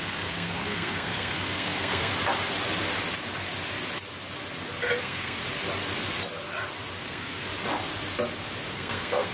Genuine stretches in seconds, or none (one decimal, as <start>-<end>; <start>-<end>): 2.1-5.0; 5.4-7.0; 7.5-8.7